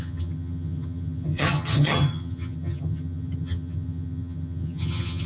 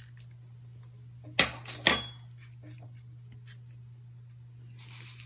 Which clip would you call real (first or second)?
second